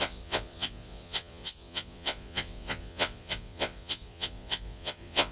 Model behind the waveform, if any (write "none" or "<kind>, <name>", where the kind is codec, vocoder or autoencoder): vocoder, Vocos